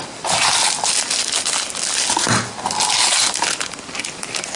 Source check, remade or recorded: recorded